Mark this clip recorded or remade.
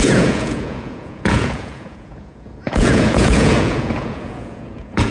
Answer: remade